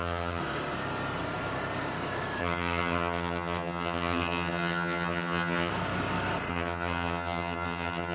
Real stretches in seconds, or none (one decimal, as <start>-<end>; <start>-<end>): 0.4-2.4; 5.7-6.5